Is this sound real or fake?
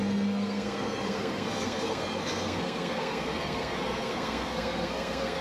fake